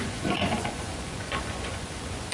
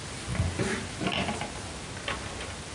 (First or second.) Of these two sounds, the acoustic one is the second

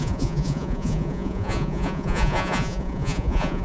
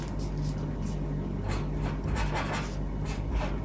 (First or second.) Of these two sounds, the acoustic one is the second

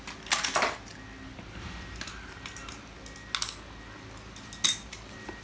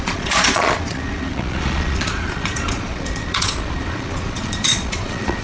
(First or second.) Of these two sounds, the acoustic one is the first